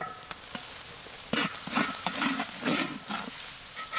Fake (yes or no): yes